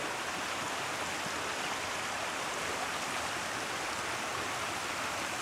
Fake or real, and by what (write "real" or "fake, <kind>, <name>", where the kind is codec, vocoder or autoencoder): real